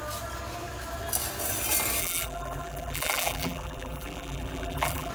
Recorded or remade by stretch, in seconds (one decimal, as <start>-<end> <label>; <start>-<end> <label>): 0.0-2.0 recorded; 2.0-5.1 remade